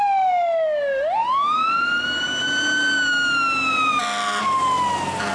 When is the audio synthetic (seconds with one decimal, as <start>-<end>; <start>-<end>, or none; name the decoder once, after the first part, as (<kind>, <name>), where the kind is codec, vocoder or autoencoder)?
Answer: none